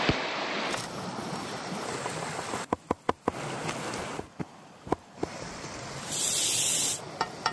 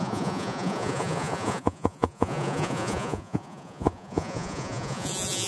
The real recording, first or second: first